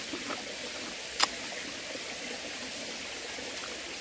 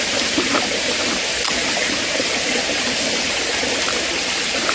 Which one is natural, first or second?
first